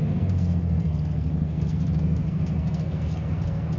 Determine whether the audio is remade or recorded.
remade